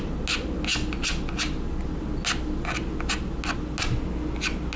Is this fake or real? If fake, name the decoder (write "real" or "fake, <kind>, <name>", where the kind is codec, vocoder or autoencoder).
real